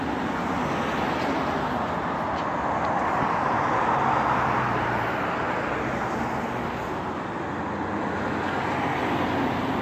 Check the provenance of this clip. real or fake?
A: real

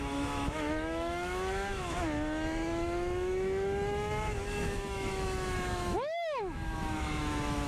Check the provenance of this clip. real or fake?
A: fake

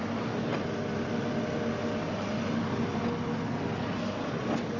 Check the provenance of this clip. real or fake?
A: real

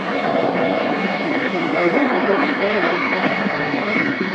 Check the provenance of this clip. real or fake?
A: fake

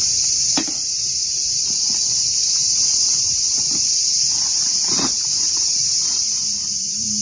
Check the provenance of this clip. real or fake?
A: fake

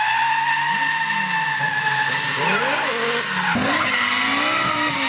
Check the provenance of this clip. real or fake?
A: real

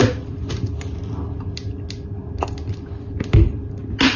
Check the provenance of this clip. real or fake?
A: real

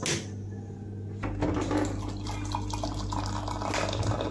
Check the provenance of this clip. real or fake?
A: real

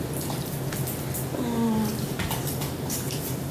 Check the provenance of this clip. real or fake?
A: real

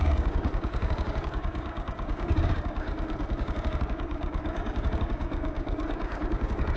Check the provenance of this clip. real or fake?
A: fake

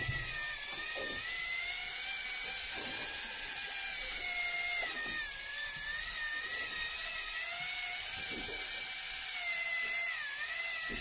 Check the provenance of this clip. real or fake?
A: real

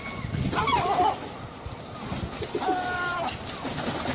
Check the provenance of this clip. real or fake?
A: real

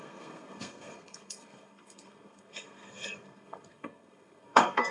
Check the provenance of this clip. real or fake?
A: fake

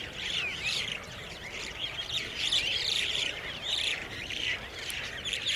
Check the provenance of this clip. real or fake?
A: fake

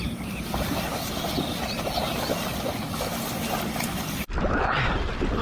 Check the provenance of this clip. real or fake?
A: real